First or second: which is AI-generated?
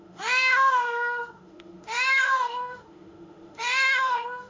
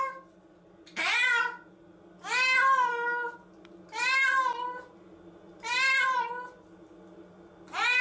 first